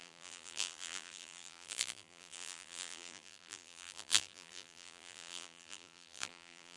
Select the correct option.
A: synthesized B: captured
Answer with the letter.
A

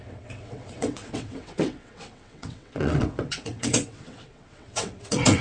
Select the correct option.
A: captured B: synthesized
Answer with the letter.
B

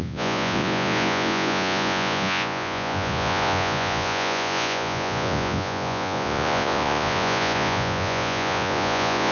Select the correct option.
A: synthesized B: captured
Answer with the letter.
A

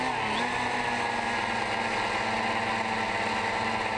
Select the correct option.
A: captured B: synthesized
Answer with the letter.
A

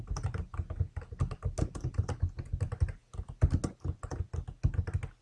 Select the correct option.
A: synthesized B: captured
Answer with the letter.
B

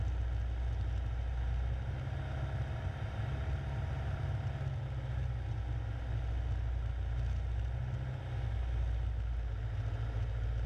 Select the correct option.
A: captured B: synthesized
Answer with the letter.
A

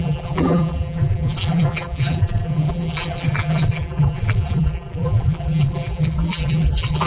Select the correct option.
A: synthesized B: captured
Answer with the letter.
A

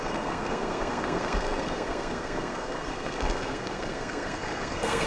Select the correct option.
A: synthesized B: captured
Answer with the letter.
A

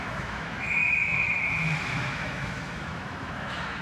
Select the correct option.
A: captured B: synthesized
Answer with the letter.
B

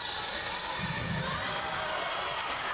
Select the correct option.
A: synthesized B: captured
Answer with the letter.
B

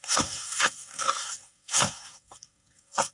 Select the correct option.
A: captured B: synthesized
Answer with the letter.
B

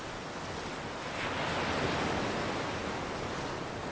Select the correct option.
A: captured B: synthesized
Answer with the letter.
A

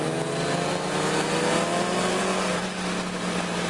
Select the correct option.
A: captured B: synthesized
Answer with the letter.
A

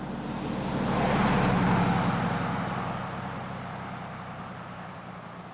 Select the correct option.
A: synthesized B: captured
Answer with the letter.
B